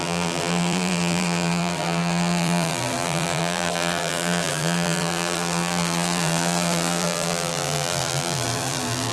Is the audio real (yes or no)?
no